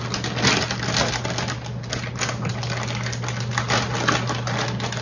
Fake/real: real